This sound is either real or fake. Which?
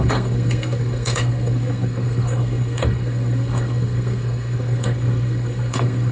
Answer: fake